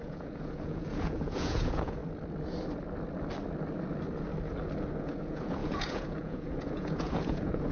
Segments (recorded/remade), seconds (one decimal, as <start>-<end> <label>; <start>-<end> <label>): 0.0-2.0 remade; 2.0-5.0 recorded; 5.0-7.7 remade